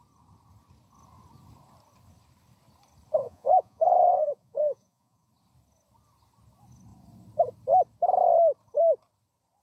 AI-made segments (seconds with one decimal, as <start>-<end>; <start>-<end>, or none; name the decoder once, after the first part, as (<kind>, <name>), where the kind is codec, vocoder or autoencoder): 3.2-5.3 (vocoder, Vocos)